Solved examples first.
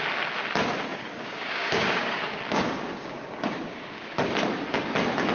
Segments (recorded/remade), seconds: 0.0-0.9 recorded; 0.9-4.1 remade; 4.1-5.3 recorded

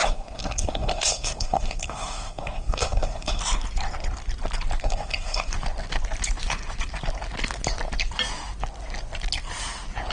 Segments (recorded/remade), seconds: 0.0-3.4 remade; 3.4-4.8 recorded; 4.8-5.5 remade; 5.5-10.1 recorded

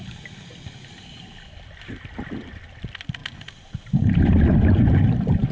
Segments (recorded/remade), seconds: 0.0-5.5 recorded

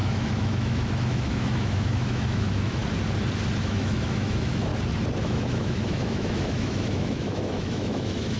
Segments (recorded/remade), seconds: 0.0-2.8 remade; 2.8-3.6 recorded; 3.6-4.7 remade; 4.7-5.2 recorded; 5.2-8.4 remade

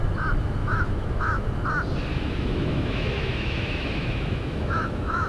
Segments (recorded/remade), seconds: 0.0-0.6 recorded; 0.6-1.5 remade; 1.5-2.1 recorded; 2.1-5.3 remade

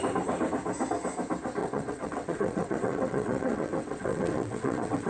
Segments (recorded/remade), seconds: 0.0-1.6 recorded; 1.6-5.1 remade

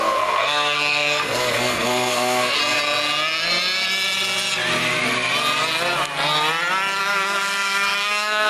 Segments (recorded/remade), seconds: 0.0-2.6 remade; 2.6-7.0 recorded; 7.0-8.5 remade

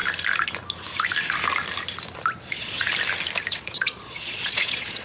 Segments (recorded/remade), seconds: 0.0-2.4 recorded; 2.4-2.9 remade; 2.9-3.5 recorded; 3.5-5.0 remade